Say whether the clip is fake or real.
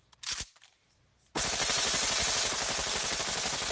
real